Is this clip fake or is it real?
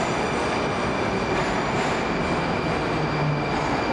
real